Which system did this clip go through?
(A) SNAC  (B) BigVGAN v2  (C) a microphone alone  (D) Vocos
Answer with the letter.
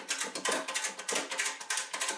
C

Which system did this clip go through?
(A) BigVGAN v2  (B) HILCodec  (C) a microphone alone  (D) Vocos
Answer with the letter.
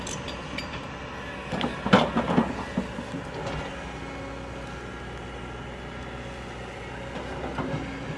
C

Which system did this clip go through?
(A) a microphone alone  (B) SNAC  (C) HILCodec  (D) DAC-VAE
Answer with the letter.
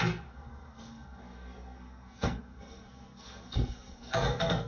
B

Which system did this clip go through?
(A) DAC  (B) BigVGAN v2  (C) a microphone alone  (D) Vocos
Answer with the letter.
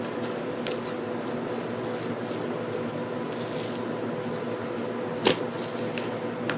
C